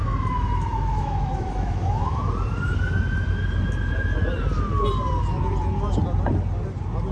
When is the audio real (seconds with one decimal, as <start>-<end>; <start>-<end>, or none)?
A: 2.3-7.1